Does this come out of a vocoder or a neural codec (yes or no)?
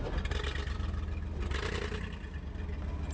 no